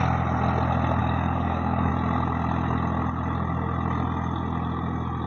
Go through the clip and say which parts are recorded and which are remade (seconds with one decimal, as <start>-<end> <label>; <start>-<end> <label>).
0.0-1.0 recorded; 1.0-1.9 remade; 1.9-5.3 recorded

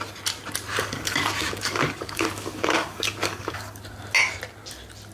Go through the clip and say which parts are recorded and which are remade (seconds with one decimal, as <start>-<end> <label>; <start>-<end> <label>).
0.0-0.7 recorded; 0.7-3.8 remade; 3.8-5.1 recorded

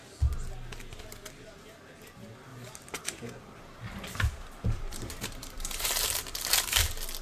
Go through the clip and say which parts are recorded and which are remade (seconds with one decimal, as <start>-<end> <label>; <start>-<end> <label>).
0.0-2.5 recorded; 2.5-6.8 remade; 6.8-7.2 recorded